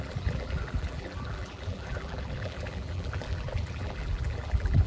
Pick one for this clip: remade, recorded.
remade